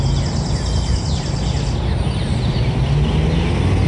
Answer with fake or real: real